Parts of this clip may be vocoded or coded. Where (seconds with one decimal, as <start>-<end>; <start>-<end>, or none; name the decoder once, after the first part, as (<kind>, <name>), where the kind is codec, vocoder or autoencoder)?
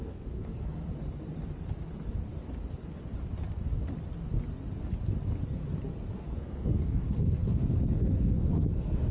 0.0-0.8 (codec, SNAC); 6.0-9.1